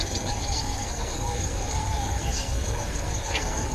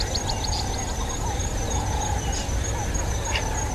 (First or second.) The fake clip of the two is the first